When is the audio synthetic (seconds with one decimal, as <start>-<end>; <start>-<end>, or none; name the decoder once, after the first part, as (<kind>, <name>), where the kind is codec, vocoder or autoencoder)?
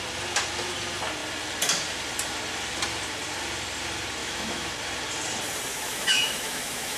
4.2-4.8 (autoencoder, DAC-VAE); 5.7-7.0